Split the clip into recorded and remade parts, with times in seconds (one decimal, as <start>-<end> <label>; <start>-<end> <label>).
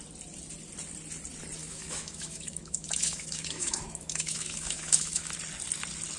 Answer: 0.0-1.6 recorded; 1.6-5.3 remade; 5.3-6.2 recorded